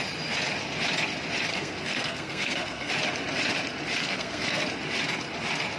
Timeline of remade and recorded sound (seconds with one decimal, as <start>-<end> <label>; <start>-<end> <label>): 0.0-1.5 recorded; 1.5-2.9 remade; 2.9-4.0 recorded; 4.0-4.6 remade; 4.6-5.8 recorded